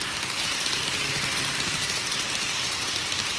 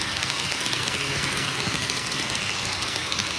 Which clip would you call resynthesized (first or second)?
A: second